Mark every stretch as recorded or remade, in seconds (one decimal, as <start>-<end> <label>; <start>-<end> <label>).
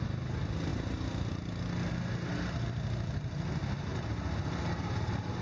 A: 0.0-5.4 recorded